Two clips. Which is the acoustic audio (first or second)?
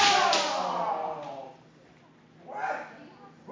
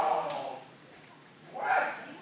first